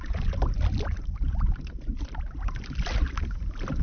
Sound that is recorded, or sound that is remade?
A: remade